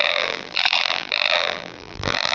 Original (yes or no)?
no